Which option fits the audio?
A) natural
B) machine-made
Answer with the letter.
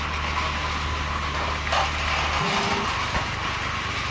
A